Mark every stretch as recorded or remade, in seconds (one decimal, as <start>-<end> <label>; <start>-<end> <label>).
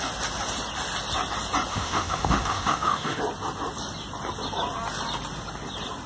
0.0-1.7 recorded; 1.7-3.2 remade; 3.2-6.1 recorded